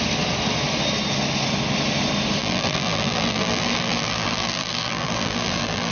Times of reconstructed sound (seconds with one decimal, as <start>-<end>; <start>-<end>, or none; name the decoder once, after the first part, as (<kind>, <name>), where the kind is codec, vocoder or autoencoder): 2.4-5.9 (vocoder, BigVGAN v2)